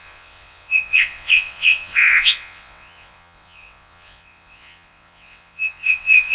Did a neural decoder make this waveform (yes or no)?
yes